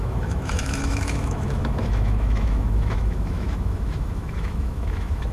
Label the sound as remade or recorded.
remade